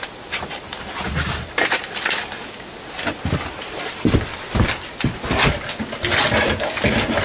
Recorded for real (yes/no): yes